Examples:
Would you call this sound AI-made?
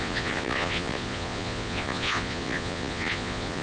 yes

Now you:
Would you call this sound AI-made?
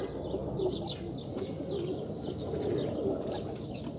no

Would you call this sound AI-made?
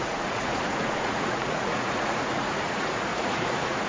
yes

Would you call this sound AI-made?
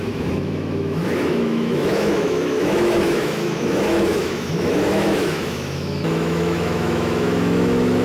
yes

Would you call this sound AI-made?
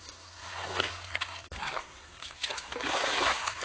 yes